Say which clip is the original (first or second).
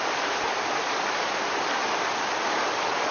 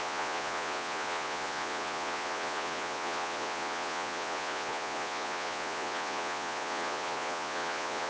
first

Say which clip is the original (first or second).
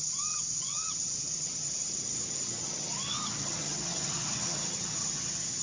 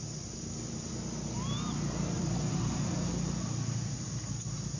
second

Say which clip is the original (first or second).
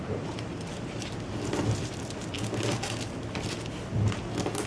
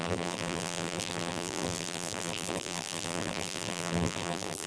first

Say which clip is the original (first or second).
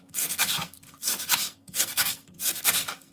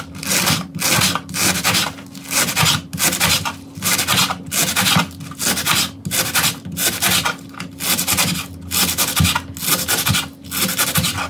second